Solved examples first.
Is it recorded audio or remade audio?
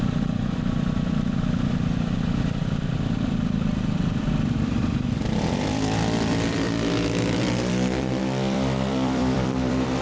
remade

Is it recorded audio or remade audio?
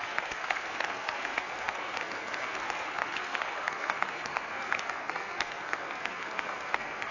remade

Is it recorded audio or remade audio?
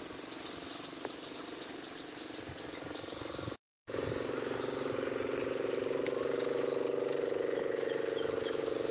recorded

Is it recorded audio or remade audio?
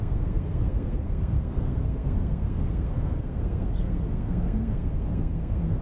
remade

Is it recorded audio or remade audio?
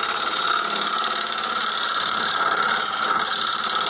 remade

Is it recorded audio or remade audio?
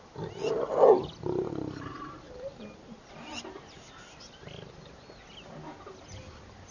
recorded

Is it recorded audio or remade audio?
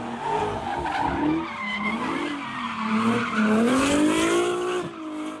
recorded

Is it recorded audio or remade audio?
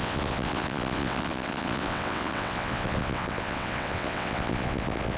remade